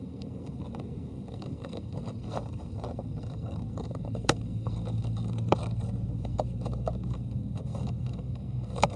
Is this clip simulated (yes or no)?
yes